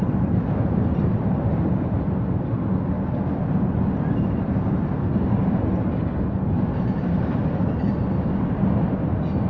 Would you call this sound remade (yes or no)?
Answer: no